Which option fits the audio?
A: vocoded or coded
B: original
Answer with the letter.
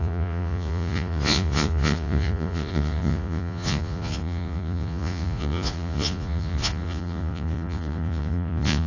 A